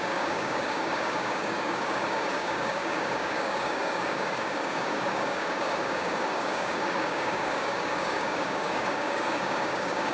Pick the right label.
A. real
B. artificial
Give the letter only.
B